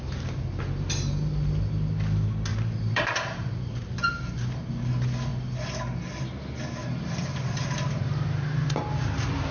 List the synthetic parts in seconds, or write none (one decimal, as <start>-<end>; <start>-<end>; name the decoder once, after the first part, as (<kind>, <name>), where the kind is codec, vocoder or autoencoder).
2.5-3.7 (vocoder, BigVGAN v2); 6.8-9.5